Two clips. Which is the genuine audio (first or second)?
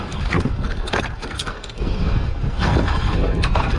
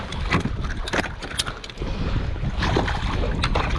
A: second